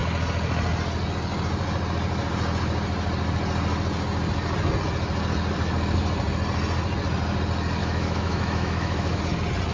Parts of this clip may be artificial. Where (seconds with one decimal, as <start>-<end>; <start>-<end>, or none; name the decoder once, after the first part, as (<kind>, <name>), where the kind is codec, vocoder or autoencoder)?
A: 7.8-9.2 (autoencoder, DAC-VAE)